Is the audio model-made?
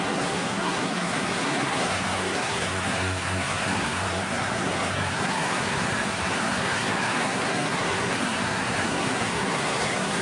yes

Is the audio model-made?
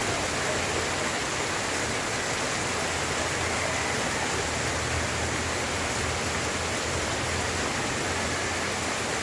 no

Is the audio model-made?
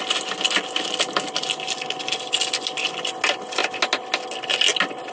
no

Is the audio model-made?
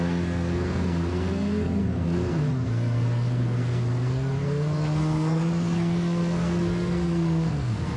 yes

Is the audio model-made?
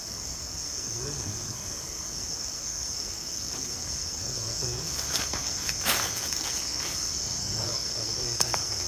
yes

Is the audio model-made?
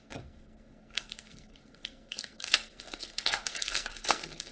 yes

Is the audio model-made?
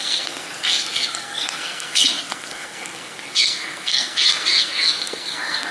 yes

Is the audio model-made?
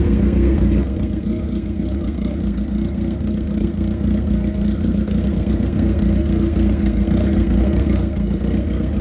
yes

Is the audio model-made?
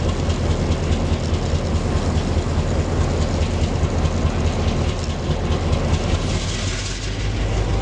no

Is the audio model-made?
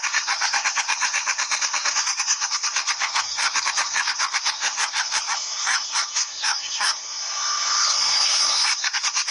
yes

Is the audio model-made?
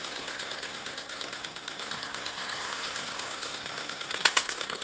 yes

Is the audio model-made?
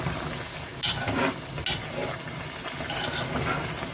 no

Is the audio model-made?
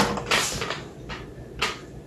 no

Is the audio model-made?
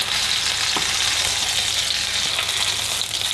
no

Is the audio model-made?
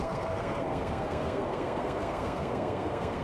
yes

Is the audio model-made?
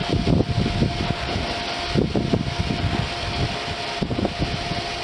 no